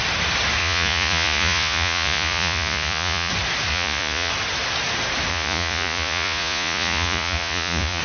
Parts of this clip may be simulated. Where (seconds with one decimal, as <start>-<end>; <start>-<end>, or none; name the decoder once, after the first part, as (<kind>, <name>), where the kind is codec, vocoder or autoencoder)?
0.6-3.3 (vocoder, Vocos); 3.7-4.3; 5.3-8.0